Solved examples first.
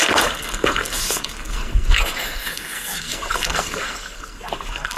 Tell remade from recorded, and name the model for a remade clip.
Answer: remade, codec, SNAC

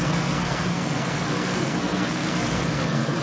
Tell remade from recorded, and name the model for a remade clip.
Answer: remade, codec, SNAC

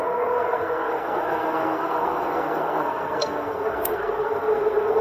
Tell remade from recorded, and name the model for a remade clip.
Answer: remade, codec, SNAC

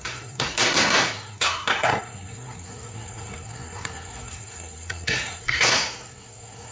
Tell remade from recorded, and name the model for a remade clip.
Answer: remade, codec, SNAC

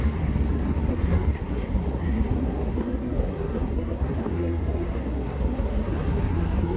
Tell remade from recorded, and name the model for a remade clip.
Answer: remade, codec, SNAC